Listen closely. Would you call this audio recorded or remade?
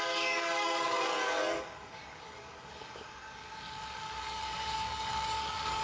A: remade